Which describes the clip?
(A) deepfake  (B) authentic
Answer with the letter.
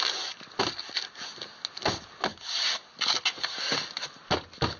B